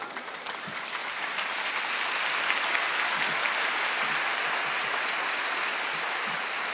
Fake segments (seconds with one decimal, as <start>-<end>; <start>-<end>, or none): 0.0-1.0; 4.8-6.7